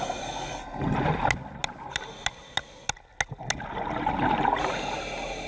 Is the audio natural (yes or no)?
yes